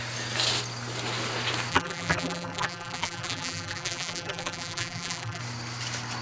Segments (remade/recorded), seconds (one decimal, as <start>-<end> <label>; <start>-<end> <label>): 0.0-1.7 recorded; 1.7-5.4 remade; 5.4-6.2 recorded